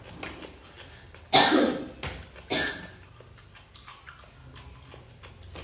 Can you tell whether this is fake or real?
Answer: real